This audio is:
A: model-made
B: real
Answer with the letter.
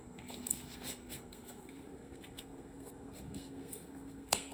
A